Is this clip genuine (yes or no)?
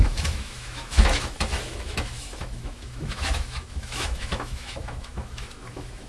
no